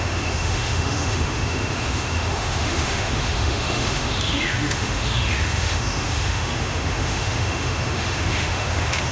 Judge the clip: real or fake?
fake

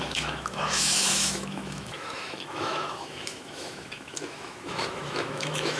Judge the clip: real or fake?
fake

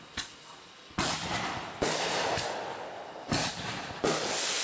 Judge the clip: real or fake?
real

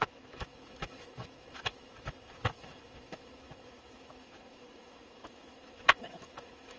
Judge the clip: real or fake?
fake